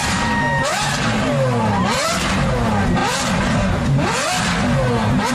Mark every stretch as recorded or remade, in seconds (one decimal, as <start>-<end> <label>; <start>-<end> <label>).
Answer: 0.0-1.3 remade; 1.3-5.3 recorded